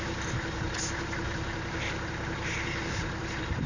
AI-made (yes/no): yes